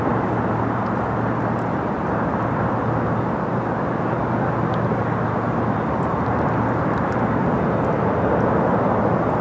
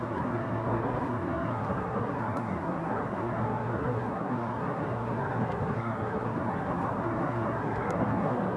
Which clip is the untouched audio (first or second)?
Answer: first